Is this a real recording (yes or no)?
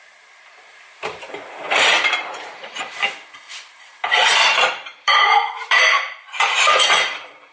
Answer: no